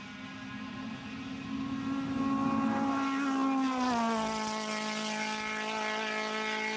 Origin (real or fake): real